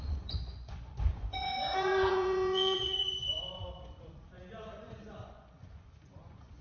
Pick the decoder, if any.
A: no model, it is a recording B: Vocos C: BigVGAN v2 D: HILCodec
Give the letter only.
B